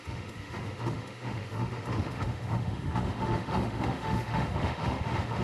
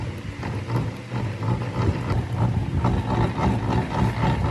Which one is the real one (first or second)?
second